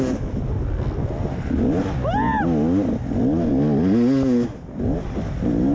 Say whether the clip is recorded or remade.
recorded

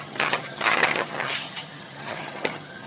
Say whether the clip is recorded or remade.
remade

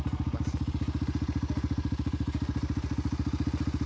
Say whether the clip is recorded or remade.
recorded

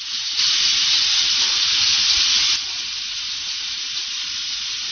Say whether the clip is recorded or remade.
recorded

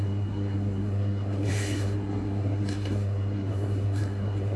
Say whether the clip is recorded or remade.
remade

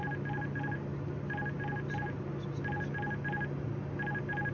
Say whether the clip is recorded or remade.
recorded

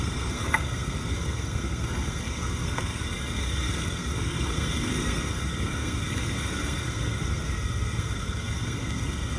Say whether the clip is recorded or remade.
remade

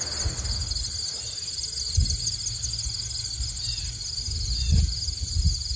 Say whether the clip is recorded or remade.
recorded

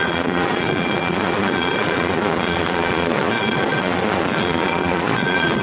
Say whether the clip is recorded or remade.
remade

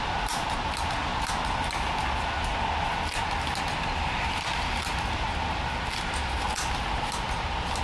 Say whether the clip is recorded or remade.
recorded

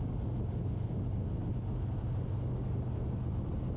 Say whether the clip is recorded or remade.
recorded